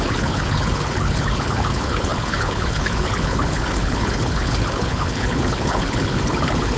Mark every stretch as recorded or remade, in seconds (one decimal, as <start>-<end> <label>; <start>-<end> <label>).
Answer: 0.0-6.8 remade